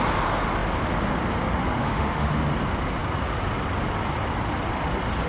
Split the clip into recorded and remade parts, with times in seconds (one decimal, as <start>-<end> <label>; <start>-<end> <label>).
0.0-1.8 recorded; 1.8-2.3 remade; 2.3-5.3 recorded